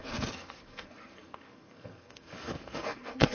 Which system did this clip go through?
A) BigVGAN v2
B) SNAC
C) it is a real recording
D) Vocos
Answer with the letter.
B